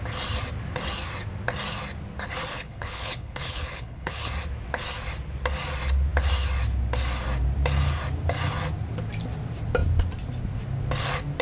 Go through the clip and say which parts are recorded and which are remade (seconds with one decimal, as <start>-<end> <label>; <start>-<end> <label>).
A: 0.0-2.5 recorded; 2.5-4.3 remade; 4.3-11.4 recorded

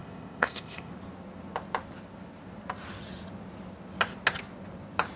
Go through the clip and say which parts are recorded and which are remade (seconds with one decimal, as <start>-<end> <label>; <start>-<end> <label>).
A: 0.0-0.9 remade; 0.9-5.2 recorded